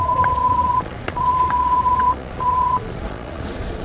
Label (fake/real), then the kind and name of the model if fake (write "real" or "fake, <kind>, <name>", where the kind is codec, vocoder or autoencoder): fake, vocoder, Vocos